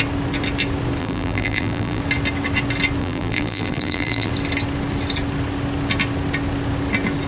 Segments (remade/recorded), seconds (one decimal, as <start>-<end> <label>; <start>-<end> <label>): 0.0-1.0 recorded; 1.0-2.0 remade; 2.0-3.0 recorded; 3.0-4.3 remade; 4.3-7.3 recorded